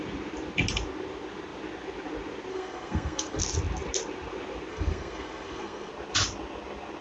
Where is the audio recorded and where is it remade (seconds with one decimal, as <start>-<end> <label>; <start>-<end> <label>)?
0.0-2.5 recorded; 2.5-3.4 remade; 3.4-4.7 recorded; 4.7-5.9 remade; 5.9-7.0 recorded